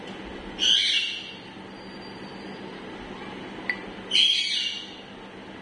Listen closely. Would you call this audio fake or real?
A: real